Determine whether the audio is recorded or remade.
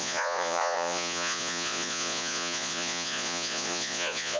remade